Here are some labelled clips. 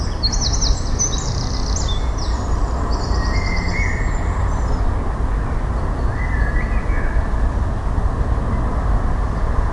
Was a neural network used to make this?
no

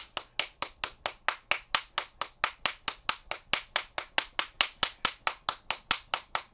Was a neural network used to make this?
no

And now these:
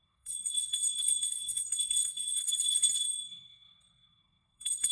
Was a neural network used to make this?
yes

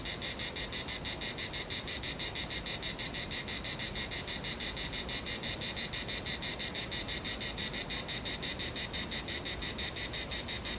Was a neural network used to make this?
no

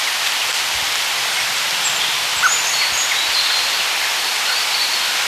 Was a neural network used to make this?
yes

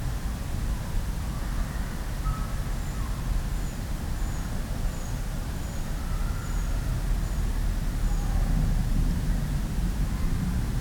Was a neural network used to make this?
no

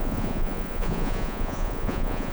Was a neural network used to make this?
yes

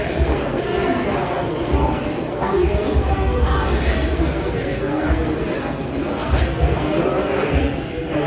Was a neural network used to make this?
yes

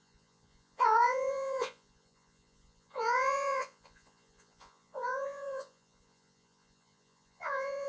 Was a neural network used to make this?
yes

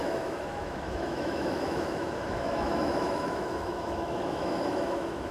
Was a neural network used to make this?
yes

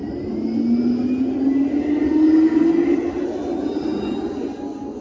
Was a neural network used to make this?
no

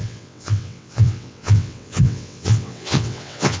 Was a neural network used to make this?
yes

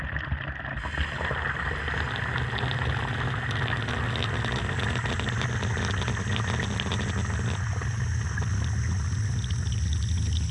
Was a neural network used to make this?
no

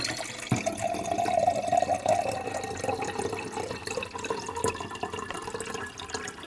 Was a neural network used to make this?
no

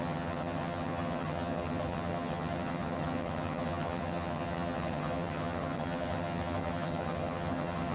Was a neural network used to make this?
yes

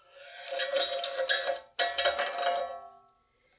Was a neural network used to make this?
no